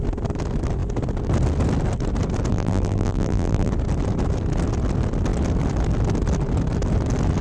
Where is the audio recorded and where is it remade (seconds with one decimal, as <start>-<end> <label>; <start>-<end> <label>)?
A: 0.0-2.5 recorded; 2.5-3.7 remade; 3.7-7.4 recorded